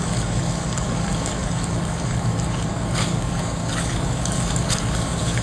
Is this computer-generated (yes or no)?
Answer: yes